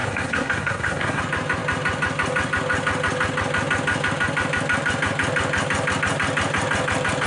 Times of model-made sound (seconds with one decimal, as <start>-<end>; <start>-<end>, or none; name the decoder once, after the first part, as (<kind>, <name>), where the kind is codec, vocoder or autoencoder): 0.0-1.2 (codec, SNAC)